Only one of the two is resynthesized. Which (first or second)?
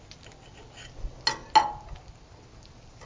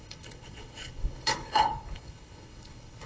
second